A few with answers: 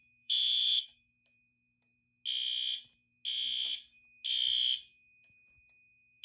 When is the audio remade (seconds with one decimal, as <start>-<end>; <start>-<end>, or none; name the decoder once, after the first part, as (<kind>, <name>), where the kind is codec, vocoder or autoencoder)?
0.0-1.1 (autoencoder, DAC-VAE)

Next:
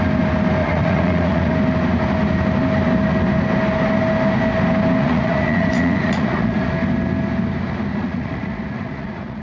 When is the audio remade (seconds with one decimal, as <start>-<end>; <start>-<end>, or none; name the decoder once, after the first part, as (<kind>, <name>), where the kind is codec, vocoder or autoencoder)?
0.6-1.5 (vocoder, Vocos); 5.0-6.7; 7.9-9.4

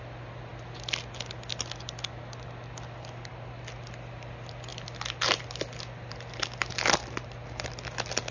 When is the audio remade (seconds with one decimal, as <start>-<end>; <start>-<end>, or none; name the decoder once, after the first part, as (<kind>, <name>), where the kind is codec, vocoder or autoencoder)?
none

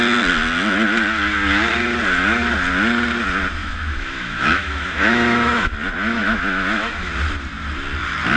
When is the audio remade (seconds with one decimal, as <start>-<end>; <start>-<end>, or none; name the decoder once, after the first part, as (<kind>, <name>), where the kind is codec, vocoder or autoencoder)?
3.6-5.7 (autoencoder, DAC-VAE); 6.2-7.1